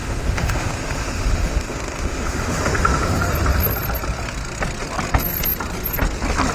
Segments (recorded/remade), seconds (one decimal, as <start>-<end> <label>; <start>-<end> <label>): 0.0-3.3 remade; 3.3-6.5 recorded